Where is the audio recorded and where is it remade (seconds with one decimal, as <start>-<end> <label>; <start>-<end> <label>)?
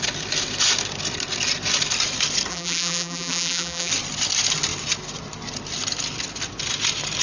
0.0-2.5 recorded; 2.5-3.9 remade; 3.9-7.2 recorded